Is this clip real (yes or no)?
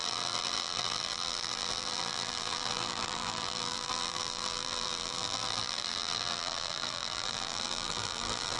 no